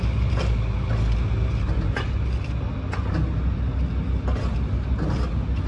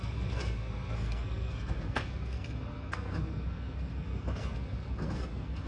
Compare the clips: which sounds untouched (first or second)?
first